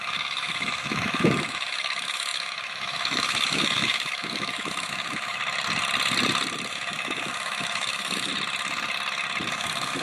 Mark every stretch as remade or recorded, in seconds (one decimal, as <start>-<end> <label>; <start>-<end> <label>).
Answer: 0.0-5.4 remade; 5.4-6.7 recorded; 6.7-8.3 remade; 8.3-9.5 recorded; 9.5-10.0 remade